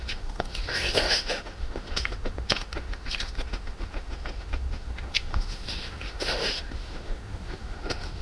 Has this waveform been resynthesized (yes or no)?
yes